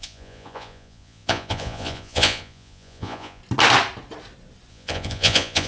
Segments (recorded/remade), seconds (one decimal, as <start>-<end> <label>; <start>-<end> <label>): 0.0-3.4 remade; 3.4-4.7 recorded; 4.7-5.7 remade